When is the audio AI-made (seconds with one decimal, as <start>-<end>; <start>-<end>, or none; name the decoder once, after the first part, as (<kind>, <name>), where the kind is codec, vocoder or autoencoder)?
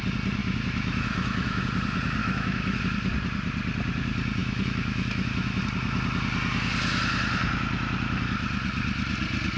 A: 0.4-1.6 (autoencoder, DAC-VAE); 2.2-2.8; 4.4-5.6